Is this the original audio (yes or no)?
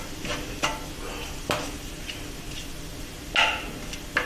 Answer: yes